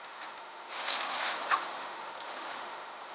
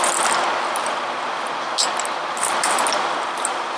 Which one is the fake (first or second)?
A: first